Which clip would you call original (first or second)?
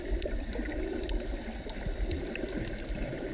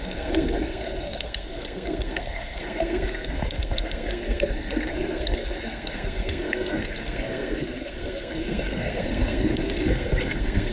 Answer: first